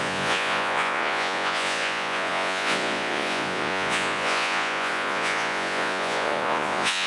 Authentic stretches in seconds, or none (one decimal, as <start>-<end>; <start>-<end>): none